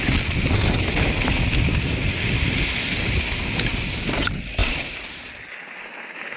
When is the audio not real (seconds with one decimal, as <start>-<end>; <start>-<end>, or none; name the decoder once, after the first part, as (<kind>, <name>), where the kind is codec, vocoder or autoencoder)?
4.6-5.3 (vocoder, BigVGAN v2)